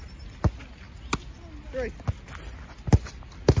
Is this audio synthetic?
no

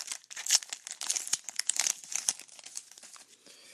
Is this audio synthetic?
no